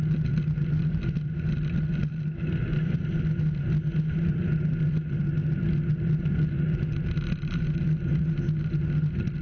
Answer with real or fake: real